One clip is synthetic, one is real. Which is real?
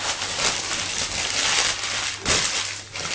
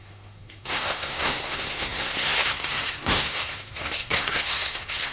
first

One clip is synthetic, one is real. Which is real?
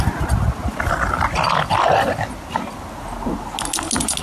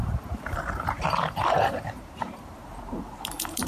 first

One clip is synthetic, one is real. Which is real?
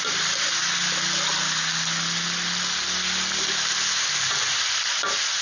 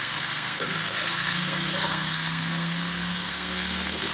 first